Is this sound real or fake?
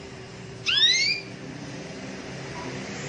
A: fake